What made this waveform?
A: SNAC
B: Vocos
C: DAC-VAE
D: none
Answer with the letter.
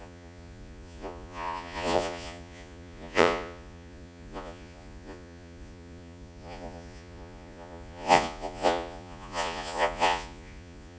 B